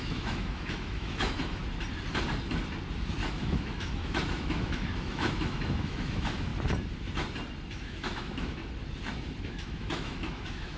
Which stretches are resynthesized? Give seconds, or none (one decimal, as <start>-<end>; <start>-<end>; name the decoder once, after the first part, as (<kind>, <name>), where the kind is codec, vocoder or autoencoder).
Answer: 0.0-1.6 (autoencoder, DAC-VAE); 3.3-6.5; 7.7-8.6; 9.4-10.8